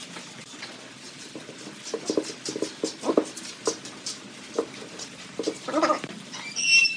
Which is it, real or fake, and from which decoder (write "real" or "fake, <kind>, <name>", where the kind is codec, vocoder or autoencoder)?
real